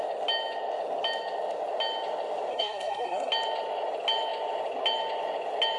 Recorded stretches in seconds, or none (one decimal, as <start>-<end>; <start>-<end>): 0.0-2.5; 3.3-5.8